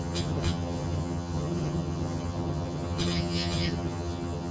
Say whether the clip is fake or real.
fake